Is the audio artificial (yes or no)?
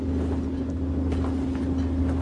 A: no